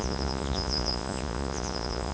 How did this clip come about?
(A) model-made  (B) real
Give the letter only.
A